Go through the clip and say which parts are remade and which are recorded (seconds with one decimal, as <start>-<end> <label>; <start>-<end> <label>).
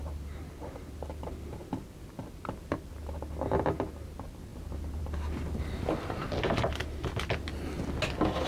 0.0-0.9 remade; 0.9-8.5 recorded